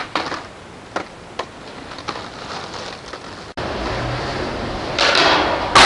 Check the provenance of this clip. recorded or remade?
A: recorded